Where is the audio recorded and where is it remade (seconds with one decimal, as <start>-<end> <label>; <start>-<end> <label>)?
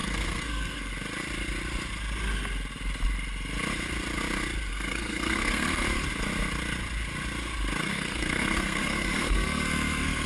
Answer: 0.0-0.9 remade; 0.9-4.7 recorded; 4.7-5.8 remade; 5.8-7.8 recorded; 7.8-10.3 remade